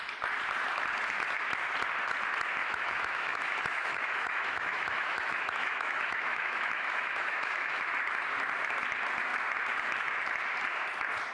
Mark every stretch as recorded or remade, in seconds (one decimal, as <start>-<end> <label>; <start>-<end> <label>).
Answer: 0.0-2.6 recorded; 2.6-7.9 remade; 7.9-11.3 recorded